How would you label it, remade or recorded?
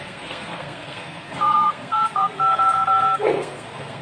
remade